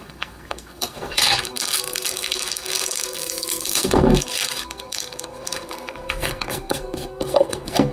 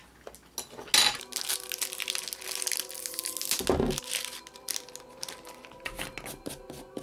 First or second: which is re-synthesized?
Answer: first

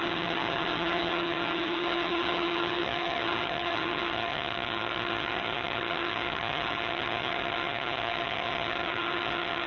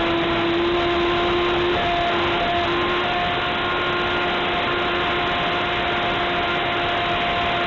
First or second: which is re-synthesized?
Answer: first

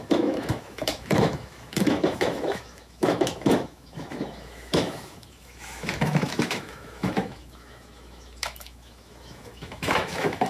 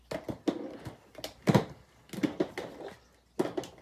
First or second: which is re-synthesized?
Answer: first